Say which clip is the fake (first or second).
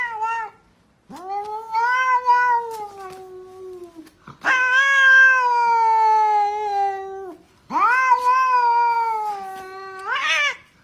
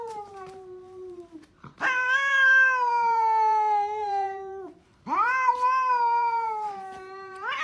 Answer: second